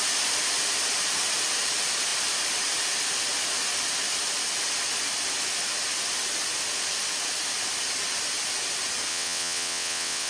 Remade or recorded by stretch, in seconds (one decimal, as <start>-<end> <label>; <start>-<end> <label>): 0.0-9.1 recorded; 9.1-10.3 remade